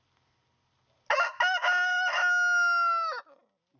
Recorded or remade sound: recorded